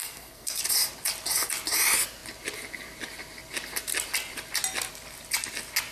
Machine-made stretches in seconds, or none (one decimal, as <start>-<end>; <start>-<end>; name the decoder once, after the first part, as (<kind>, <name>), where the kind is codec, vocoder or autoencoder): 0.0-0.6 (codec, SNAC)